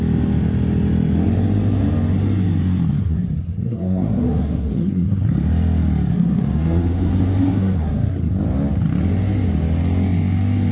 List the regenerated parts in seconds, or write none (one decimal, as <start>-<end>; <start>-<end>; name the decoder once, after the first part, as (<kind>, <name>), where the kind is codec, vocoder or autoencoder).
2.9-5.3 (codec, SNAC); 6.1-8.3